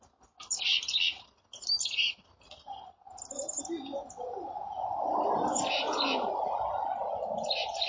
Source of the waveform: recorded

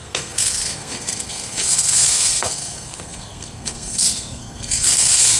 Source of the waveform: remade